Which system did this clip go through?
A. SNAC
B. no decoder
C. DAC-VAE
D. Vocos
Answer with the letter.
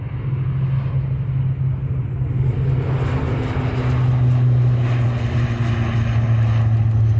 B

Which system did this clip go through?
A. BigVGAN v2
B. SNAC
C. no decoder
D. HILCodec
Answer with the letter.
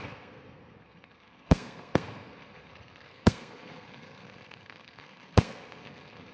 B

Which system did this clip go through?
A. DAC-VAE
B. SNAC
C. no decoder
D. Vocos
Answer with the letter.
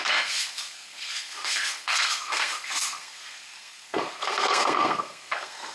B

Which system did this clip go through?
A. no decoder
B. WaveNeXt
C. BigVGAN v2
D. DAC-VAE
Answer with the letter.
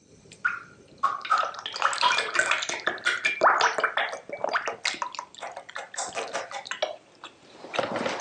A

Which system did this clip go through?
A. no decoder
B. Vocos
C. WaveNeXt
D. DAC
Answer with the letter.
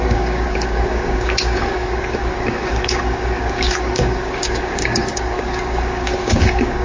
D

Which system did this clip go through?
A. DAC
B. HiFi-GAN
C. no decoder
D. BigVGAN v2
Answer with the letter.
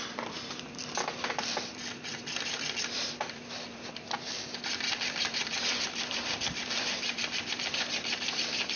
D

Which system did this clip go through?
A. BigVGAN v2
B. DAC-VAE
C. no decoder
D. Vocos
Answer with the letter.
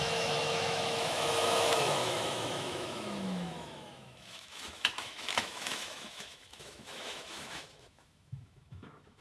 B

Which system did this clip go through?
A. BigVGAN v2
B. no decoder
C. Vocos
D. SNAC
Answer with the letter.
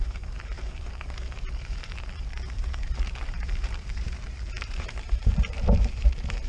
A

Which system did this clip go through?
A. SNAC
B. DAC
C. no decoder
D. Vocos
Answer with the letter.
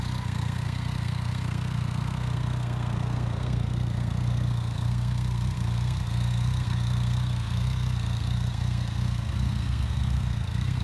A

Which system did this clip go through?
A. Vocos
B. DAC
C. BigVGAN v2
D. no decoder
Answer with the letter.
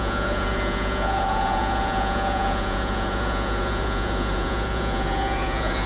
A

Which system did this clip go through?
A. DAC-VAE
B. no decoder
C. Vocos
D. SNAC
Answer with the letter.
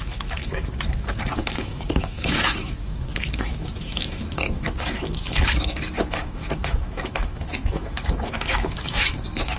A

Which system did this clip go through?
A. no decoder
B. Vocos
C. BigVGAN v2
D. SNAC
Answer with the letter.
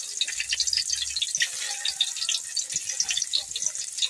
A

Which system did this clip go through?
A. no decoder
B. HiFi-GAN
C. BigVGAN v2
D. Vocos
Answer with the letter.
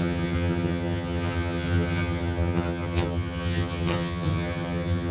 B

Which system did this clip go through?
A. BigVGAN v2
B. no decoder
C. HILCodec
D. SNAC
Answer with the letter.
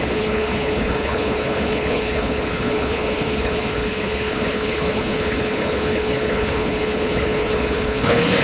C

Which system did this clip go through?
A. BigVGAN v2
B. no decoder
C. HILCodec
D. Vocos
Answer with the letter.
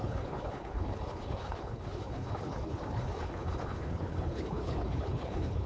C